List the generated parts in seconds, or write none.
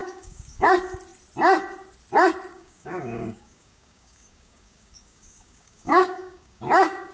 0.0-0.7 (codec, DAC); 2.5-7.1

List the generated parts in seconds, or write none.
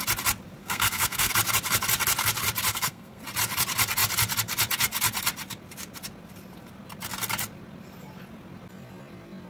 0.6-1.3 (codec, SNAC); 2.7-3.2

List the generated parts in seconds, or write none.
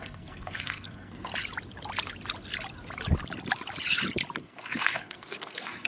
0.0-1.3 (codec, SNAC); 4.4-5.9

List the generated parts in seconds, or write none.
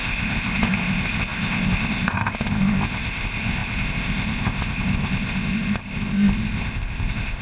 0.0-7.4 (codec, ZipCodec)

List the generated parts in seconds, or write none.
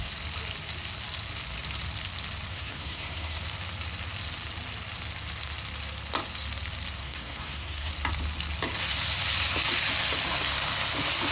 2.5-3.4 (codec, SNAC); 7.0-7.9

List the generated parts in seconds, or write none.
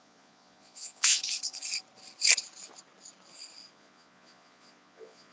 0.0-1.2 (vocoder, Vocos); 3.7-5.3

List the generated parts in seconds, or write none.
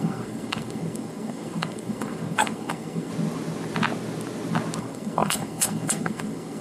0.0-3.1 (codec, SNAC); 4.8-6.6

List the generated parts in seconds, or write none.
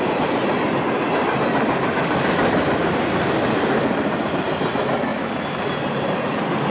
none